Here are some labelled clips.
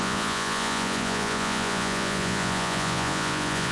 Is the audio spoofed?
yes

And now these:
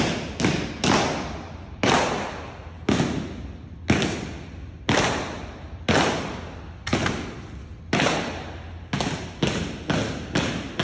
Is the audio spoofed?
no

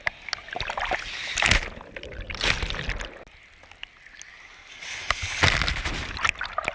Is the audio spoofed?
no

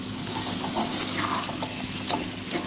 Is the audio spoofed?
no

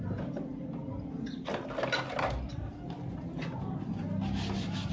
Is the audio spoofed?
no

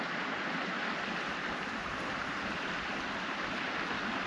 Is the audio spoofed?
no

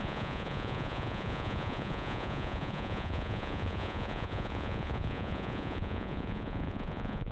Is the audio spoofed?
yes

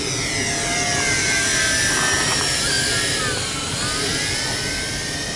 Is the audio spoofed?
no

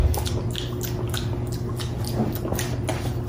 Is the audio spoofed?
no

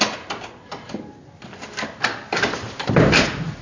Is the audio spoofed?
no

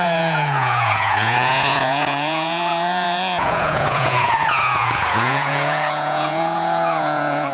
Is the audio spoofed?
yes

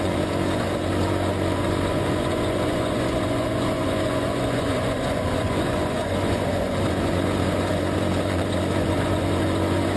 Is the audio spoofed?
yes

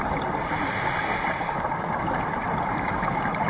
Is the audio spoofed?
no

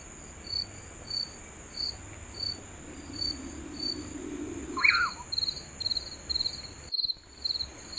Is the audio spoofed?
no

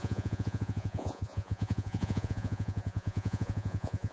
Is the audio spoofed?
yes